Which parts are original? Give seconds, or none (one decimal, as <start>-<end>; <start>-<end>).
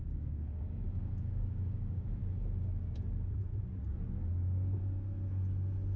2.2-6.0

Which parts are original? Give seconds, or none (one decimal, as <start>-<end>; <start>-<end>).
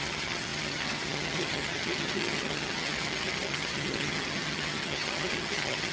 none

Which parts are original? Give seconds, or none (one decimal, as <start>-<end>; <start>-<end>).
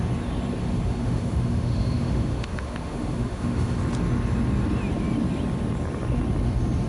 0.0-0.6; 3.8-6.9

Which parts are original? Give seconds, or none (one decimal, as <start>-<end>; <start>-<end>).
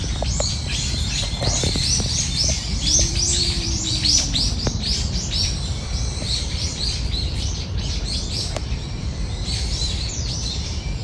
none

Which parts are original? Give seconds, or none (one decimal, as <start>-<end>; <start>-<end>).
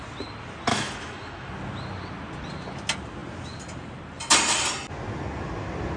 0.0-0.7; 1.5-6.0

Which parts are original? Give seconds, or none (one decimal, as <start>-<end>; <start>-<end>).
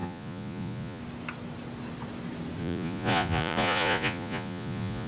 1.0-2.6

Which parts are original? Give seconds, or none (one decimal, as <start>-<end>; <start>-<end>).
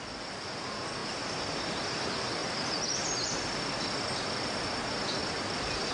0.0-5.2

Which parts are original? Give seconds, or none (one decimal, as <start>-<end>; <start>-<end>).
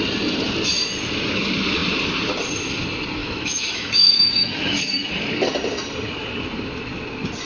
0.0-3.2; 5.1-7.5